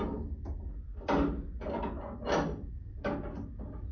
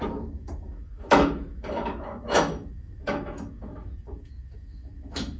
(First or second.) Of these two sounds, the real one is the first